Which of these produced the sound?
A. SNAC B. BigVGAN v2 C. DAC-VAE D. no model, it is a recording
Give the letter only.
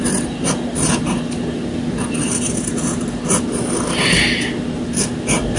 D